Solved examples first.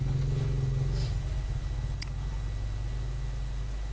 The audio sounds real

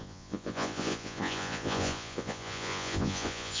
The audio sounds fake